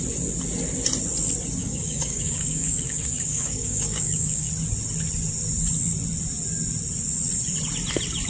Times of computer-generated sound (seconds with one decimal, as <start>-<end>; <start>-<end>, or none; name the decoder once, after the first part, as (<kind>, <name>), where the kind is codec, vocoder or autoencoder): 1.6-4.5 (codec, DAC)

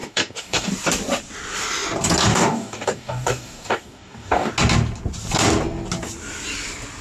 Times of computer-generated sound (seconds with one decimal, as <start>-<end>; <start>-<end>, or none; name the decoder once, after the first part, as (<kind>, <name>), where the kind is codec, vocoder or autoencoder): 0.0-0.7 (codec, DAC); 2.3-4.5